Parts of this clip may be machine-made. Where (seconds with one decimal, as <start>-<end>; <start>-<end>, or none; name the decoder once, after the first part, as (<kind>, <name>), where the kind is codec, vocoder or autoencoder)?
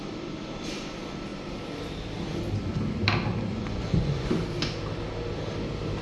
3.5-4.3 (vocoder, Vocos)